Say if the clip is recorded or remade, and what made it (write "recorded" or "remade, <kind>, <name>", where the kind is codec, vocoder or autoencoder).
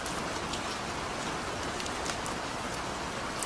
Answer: recorded